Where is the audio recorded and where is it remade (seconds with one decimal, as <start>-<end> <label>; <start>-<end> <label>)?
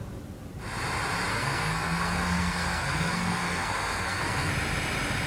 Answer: 0.0-1.3 recorded; 1.3-4.5 remade; 4.5-5.3 recorded